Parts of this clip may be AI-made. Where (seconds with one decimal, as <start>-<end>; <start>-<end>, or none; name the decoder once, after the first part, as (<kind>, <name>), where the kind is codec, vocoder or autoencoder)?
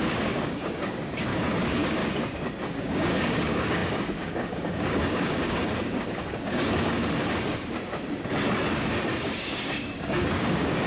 0.0-2.0 (codec, DAC); 2.7-7.0; 9.4-10.9